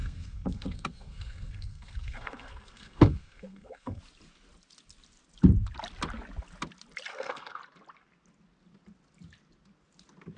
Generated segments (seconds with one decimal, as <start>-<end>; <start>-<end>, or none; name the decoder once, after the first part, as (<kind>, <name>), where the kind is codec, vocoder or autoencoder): 0.0-4.0 (codec, SNAC); 7.1-7.6